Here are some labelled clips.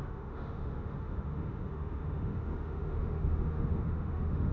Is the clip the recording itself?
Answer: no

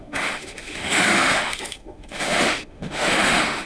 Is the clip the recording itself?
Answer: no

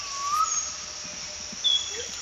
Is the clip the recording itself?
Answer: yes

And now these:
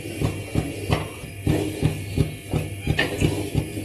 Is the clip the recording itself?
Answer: yes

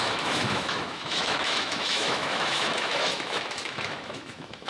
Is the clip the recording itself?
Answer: no